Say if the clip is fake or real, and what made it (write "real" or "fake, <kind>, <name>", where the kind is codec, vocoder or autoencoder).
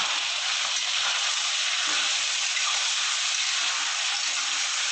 real